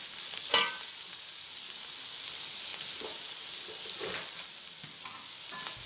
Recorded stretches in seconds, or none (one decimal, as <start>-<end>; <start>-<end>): 0.0-5.9